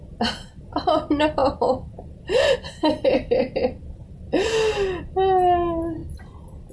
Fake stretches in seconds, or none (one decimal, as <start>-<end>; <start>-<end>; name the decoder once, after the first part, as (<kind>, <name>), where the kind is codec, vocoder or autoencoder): none